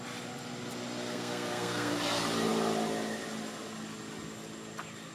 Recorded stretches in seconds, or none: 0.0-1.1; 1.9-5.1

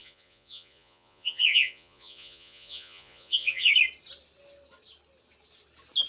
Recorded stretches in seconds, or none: 3.7-6.1

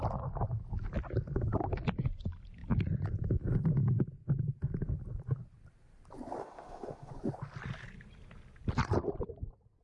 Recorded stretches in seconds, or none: 0.0-6.4; 7.1-9.8